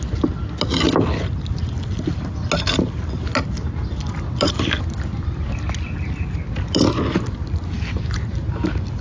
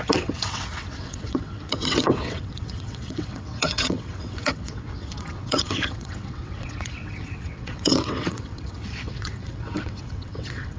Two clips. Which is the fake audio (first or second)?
second